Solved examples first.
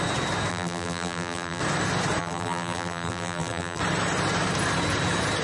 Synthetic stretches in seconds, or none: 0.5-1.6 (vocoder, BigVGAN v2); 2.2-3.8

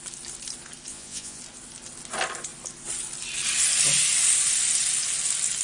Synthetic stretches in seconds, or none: 0.9-1.4 (vocoder, Vocos)

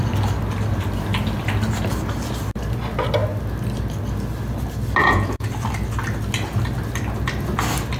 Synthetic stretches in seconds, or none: 5.0-5.5 (vocoder, Vocos)

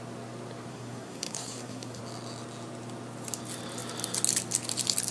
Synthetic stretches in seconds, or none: 0.7-2.0 (codec, SNAC)

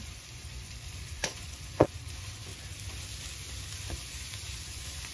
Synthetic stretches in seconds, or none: 0.0-2.5 (vocoder, Vocos); 3.9-5.1

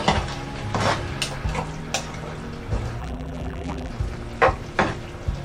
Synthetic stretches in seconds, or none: 3.0-3.9 (vocoder, BigVGAN v2)

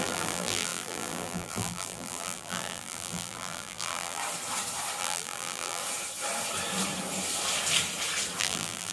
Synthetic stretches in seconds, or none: 0.0-4.2 (vocoder, BigVGAN v2); 5.0-5.8; 8.4-8.9

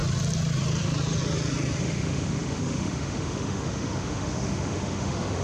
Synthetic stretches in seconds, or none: 1.8-5.4 (autoencoder, DAC-VAE)